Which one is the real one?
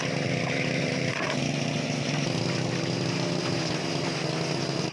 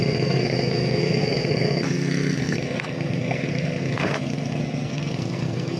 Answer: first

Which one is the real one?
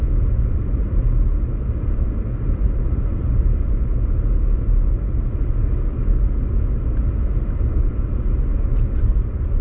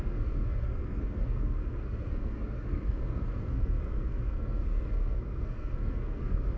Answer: first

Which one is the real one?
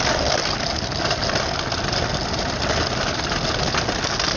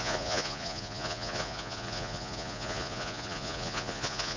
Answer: first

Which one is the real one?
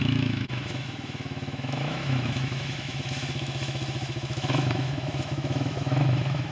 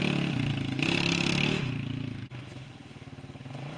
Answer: second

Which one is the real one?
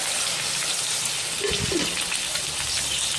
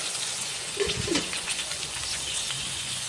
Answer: first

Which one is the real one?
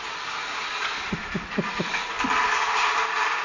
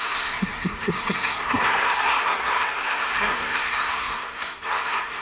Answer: first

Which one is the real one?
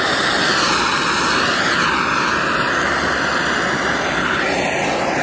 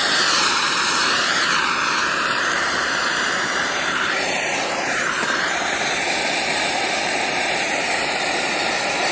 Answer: first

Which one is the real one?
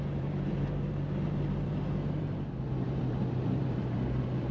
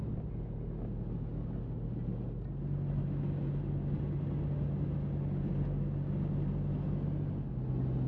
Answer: second